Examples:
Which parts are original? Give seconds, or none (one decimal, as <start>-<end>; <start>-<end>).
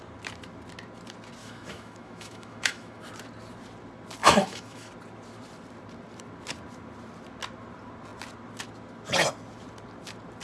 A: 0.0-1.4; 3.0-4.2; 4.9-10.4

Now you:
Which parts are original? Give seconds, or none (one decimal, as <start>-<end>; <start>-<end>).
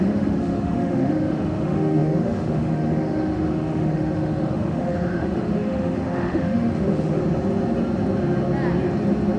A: 7.2-9.4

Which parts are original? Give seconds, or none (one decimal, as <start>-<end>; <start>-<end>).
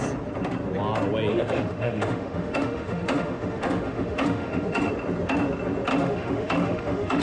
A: 0.0-1.3; 4.9-5.9